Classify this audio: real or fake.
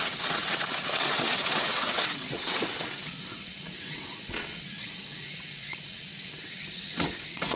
fake